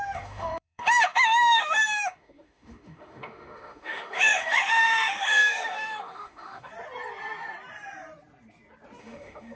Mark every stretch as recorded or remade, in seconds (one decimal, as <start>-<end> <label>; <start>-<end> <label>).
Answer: 0.0-6.7 remade; 6.7-9.0 recorded; 9.0-9.6 remade